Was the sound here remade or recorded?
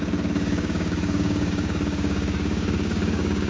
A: remade